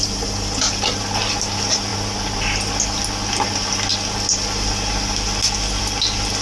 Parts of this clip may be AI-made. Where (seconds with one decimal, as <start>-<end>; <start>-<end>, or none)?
none

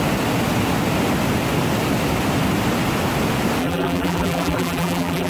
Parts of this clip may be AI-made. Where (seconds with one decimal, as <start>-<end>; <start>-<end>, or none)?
3.6-5.3

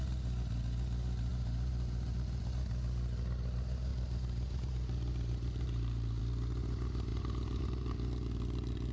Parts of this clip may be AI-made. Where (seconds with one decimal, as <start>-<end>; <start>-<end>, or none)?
1.3-2.4; 3.9-6.2

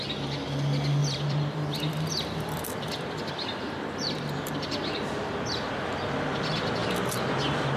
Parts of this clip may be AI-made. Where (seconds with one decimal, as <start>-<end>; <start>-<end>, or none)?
1.0-5.7; 6.8-7.3

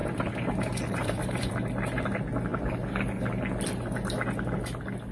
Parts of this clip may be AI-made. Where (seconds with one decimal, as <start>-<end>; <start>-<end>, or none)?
0.0-1.5